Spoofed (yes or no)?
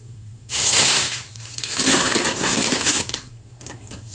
yes